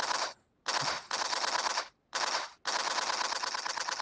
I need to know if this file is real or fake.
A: real